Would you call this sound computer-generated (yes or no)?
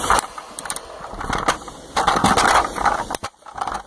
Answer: no